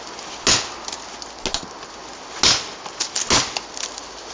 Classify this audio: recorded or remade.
recorded